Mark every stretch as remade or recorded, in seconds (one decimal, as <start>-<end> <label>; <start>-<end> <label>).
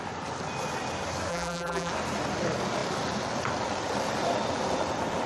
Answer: 0.0-1.3 recorded; 1.3-1.9 remade; 1.9-5.3 recorded